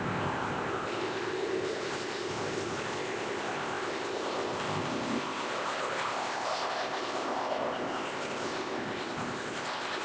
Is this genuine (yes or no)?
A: no